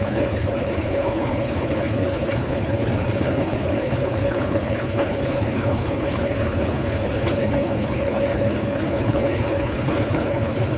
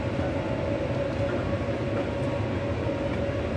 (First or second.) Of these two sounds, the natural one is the second